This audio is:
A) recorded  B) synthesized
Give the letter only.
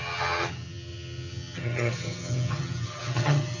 B